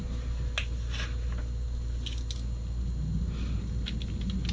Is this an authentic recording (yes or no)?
yes